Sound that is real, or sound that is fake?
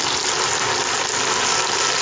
real